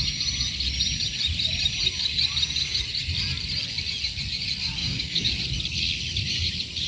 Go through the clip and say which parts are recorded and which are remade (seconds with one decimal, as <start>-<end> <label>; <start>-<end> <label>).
0.0-4.8 recorded; 4.8-5.3 remade; 5.3-6.9 recorded

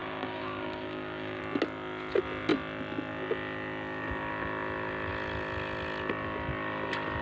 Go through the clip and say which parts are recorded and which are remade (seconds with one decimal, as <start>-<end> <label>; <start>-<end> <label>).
0.0-1.4 remade; 1.4-7.2 recorded

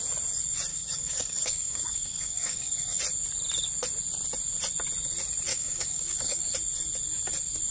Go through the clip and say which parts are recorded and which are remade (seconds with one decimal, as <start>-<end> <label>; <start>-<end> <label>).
0.0-0.7 recorded; 0.7-3.0 remade; 3.0-5.5 recorded; 5.5-6.4 remade; 6.4-7.7 recorded